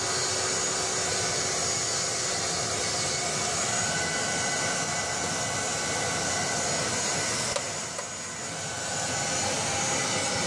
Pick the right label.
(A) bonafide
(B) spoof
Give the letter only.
A